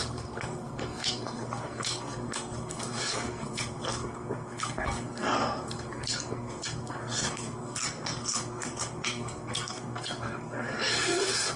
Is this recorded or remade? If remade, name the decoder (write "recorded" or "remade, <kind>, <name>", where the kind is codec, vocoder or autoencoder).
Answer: remade, codec, SNAC